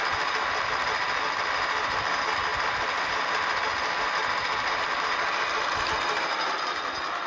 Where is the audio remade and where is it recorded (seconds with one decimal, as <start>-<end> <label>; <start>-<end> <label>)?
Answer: 0.0-7.3 recorded

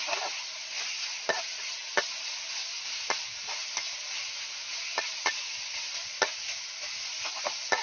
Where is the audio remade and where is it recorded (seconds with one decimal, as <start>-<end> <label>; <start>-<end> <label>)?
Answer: 0.0-7.8 recorded

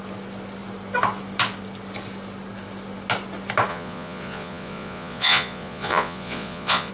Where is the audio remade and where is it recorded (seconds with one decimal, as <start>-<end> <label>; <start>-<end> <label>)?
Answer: 0.0-3.7 recorded; 3.7-6.9 remade

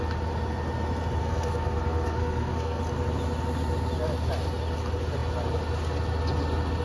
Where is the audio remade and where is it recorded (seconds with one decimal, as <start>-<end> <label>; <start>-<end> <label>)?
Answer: 0.0-1.2 recorded; 1.2-2.8 remade; 2.8-6.8 recorded

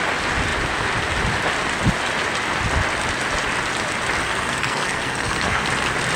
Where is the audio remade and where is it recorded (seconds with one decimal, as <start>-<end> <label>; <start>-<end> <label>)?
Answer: 0.0-4.2 recorded; 4.2-5.7 remade; 5.7-6.2 recorded

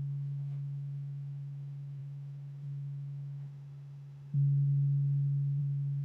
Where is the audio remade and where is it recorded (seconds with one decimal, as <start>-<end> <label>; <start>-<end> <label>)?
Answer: 0.0-6.0 remade